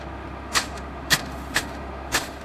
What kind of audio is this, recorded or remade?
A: remade